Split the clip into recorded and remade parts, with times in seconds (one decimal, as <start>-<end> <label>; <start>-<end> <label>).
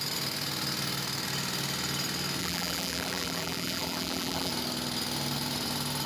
0.0-2.4 recorded; 2.4-4.5 remade; 4.5-6.1 recorded